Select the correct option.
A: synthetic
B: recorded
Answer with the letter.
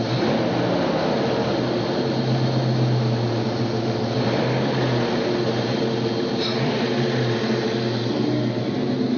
B